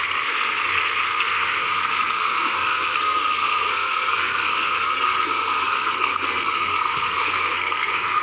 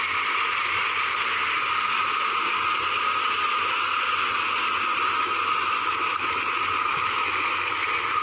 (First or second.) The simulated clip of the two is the first